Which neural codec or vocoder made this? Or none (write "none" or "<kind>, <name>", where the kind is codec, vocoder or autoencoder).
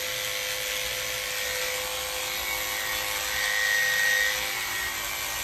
none